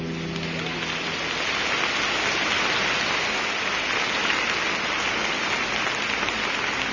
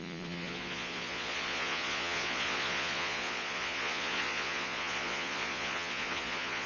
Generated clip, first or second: second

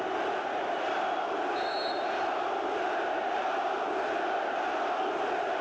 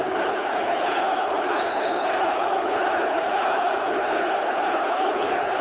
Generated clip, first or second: second